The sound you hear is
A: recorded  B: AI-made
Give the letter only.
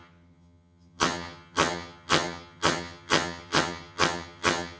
B